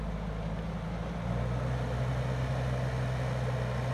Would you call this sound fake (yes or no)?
no